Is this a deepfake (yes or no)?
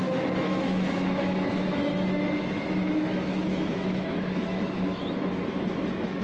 yes